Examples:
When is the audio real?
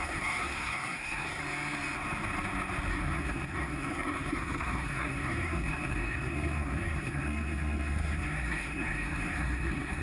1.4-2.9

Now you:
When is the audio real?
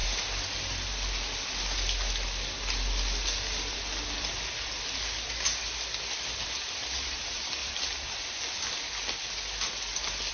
0.0-10.3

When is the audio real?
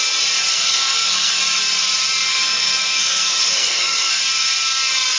0.0-0.5; 1.4-2.3; 4.2-5.2